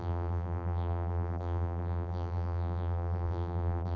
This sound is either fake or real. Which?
fake